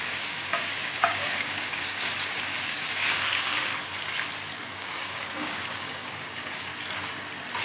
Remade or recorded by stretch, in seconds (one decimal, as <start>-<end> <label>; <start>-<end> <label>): 0.0-3.7 remade; 3.7-4.7 recorded; 4.7-6.7 remade; 6.7-7.6 recorded